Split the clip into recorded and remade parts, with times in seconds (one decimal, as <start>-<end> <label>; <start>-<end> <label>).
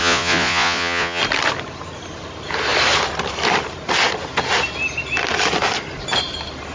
0.0-1.2 remade; 1.2-6.7 recorded